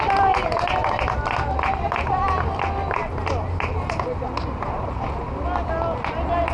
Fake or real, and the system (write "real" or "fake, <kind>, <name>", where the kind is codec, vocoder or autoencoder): real